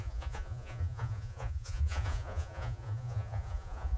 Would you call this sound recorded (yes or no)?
no